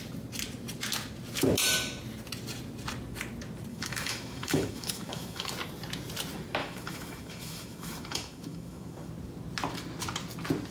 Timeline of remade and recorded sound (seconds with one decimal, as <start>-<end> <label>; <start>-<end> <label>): 0.0-3.7 recorded; 3.7-5.5 remade; 5.5-6.6 recorded; 6.6-9.1 remade; 9.1-10.7 recorded